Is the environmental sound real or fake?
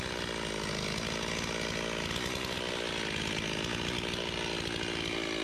real